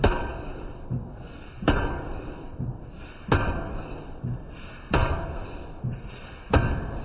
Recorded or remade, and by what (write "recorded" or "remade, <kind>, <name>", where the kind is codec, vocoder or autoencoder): recorded